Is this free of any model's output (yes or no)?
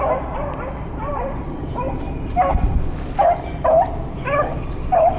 no